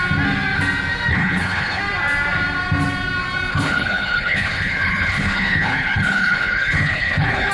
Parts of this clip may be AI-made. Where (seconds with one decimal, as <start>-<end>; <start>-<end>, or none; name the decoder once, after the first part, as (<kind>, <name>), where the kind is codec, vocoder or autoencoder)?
1.1-1.8 (codec, HILCodec); 3.5-7.5